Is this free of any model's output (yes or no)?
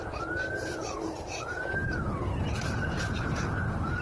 no